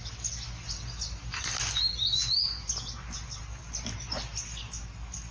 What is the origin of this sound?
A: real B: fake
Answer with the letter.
A